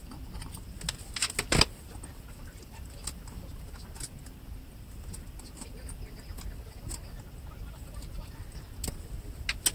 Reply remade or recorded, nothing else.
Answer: recorded